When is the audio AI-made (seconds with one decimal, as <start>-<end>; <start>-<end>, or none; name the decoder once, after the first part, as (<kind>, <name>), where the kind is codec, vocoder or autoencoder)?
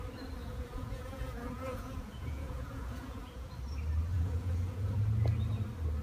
0.4-3.5 (vocoder, Vocos); 4.1-5.0